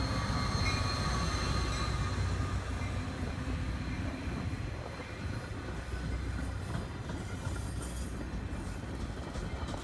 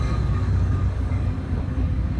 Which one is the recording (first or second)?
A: first